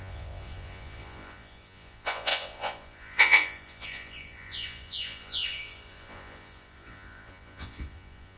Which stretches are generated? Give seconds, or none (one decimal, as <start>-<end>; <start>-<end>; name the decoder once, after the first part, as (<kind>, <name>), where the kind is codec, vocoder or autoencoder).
0.0-8.4 (vocoder, Vocos)